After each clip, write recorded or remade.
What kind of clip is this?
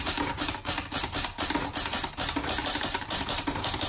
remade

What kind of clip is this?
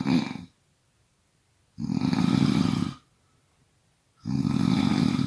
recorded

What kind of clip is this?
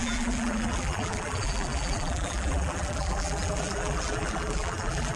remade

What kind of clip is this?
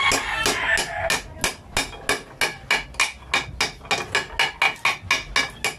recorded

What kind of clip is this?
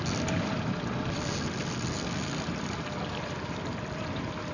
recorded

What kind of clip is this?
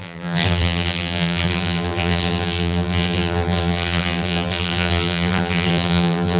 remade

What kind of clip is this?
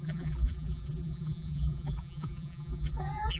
remade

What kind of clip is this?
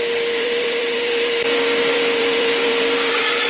remade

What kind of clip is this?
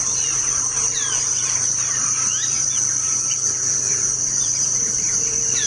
remade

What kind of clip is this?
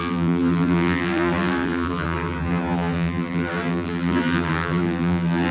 remade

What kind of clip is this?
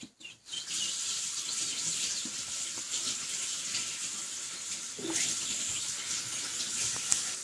remade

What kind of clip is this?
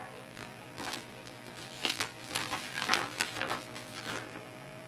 remade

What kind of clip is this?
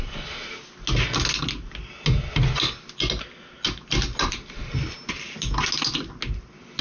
recorded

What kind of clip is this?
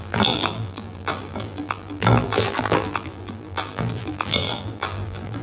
remade